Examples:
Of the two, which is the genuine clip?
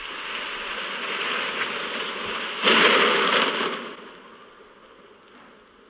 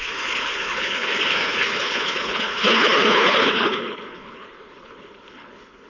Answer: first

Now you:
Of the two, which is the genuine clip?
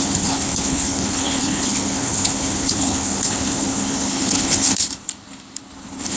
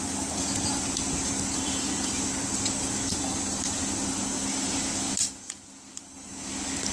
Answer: second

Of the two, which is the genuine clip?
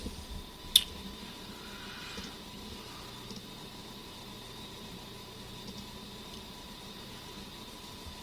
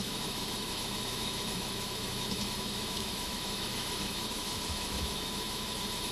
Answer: first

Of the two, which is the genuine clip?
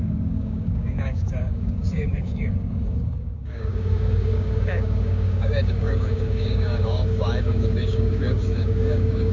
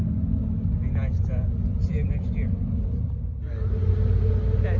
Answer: second